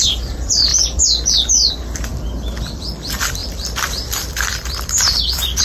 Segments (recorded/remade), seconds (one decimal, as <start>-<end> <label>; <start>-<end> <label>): 0.0-2.1 remade; 2.1-2.6 recorded; 2.6-5.6 remade